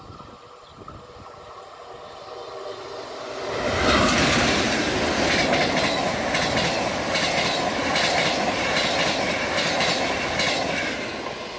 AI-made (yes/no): no